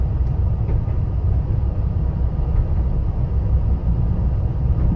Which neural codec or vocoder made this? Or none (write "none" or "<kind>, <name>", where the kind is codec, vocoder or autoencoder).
none